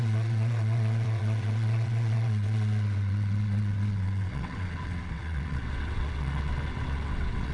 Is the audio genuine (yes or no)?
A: no